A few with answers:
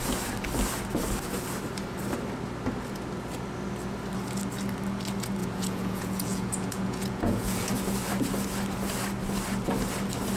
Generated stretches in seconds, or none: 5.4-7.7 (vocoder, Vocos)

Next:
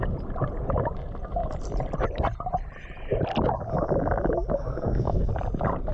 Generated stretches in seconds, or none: 4.6-5.3 (codec, SNAC)